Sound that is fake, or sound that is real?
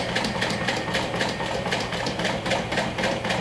fake